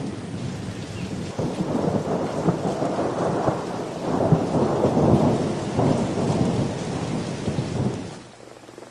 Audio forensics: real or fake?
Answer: real